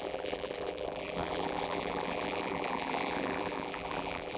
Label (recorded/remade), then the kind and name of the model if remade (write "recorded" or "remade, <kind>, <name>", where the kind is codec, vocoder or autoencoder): remade, vocoder, BigVGAN v2